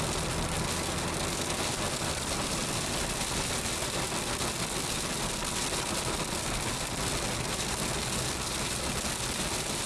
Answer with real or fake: real